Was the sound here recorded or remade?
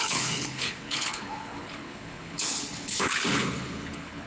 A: remade